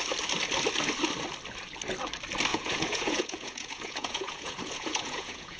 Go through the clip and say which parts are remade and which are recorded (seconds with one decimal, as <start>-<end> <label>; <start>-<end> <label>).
0.0-2.5 recorded; 2.5-5.6 remade